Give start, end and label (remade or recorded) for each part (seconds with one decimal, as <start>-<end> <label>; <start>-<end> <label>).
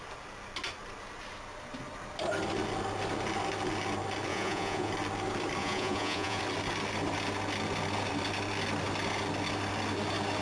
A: 0.0-4.3 recorded; 4.3-4.9 remade; 4.9-5.6 recorded; 5.6-6.4 remade; 6.4-10.4 recorded